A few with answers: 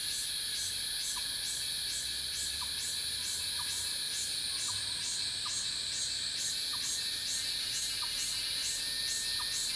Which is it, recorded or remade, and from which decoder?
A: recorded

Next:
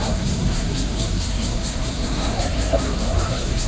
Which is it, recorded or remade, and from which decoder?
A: remade, codec, SNAC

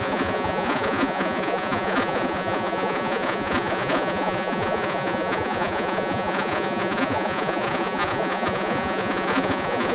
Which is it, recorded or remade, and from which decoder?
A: remade, vocoder, Vocos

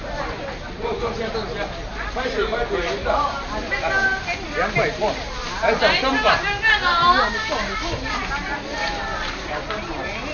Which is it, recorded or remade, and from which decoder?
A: recorded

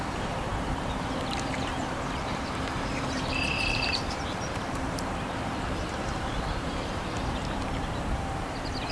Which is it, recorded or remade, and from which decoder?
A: remade, vocoder, BigVGAN v2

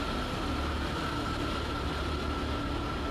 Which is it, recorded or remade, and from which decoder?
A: recorded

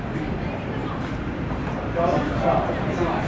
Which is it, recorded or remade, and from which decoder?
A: remade, vocoder, BigVGAN v2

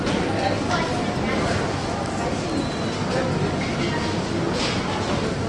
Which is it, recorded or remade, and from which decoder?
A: recorded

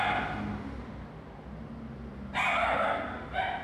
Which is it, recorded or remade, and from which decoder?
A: recorded